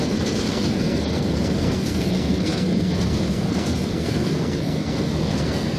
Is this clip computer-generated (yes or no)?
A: yes